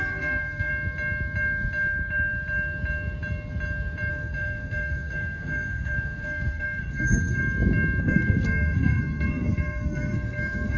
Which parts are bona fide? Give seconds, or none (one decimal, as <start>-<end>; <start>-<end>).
0.7-4.1; 7.4-8.0